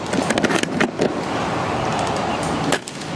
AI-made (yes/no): no